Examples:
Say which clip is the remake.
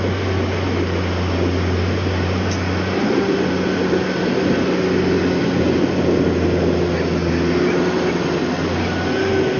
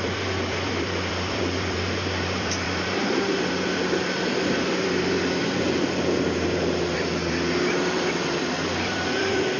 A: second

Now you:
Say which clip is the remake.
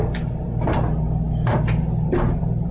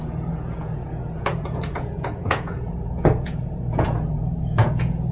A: second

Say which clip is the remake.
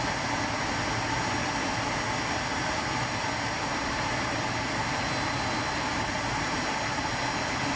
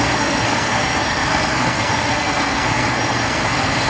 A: second